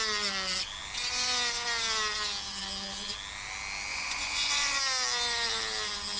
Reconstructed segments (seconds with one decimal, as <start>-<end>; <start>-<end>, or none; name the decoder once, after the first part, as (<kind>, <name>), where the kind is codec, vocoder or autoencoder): 3.9-4.8 (vocoder, Vocos)